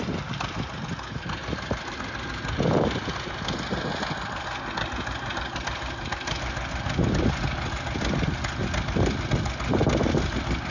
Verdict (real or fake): real